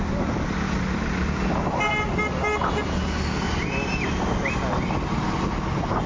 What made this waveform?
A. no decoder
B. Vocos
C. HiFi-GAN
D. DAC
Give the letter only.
A